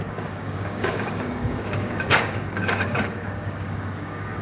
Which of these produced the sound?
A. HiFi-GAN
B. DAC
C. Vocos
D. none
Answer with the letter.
B